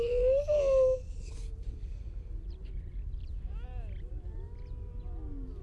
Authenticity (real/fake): real